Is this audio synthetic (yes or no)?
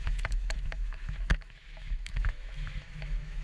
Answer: yes